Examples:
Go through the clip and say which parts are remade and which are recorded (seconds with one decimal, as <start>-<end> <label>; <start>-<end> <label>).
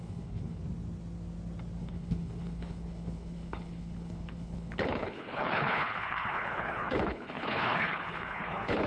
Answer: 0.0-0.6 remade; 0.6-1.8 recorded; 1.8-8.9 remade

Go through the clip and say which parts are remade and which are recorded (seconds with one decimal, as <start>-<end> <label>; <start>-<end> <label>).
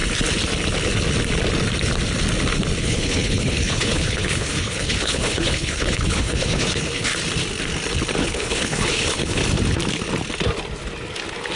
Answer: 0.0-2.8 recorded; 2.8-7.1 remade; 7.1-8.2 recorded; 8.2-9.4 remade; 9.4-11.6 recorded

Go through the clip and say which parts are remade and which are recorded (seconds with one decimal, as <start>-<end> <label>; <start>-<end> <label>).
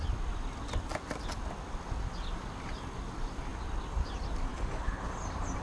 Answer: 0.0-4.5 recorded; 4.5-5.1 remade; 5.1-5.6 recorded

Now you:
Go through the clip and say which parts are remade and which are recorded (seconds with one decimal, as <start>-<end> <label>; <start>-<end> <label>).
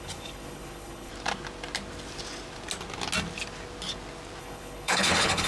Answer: 0.0-1.1 remade; 1.1-4.4 recorded; 4.4-5.5 remade